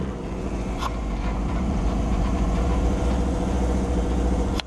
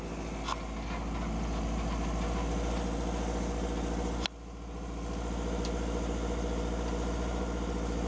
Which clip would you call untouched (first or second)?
second